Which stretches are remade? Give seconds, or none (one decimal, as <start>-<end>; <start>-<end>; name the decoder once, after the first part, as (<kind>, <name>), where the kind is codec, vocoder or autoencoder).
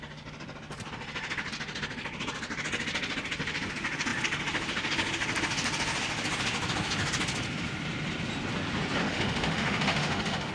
9.0-10.5 (autoencoder, DAC-VAE)